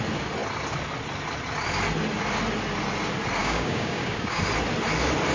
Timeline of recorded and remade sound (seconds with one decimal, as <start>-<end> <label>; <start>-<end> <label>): 0.0-3.4 recorded; 3.4-4.4 remade; 4.4-5.3 recorded